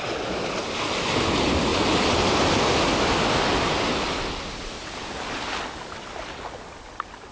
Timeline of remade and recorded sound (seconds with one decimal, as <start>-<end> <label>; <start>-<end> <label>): 0.0-7.3 recorded